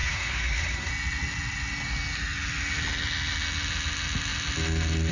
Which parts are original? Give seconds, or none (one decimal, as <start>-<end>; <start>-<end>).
0.9-5.1